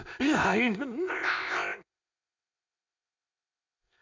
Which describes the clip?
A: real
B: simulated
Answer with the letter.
B